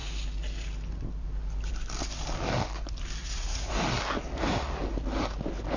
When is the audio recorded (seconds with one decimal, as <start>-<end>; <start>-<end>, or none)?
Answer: 0.0-3.2; 3.7-5.8

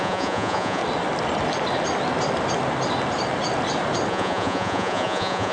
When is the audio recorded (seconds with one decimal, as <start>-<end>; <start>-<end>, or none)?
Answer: 0.8-4.1

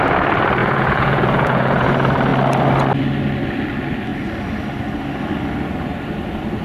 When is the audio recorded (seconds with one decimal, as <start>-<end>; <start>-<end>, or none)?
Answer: 0.0-0.6; 1.9-6.6

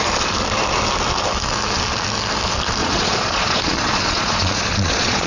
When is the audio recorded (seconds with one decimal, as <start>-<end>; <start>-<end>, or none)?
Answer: 0.0-2.8